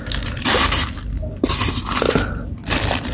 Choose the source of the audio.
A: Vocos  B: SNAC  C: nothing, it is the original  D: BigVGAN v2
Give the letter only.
D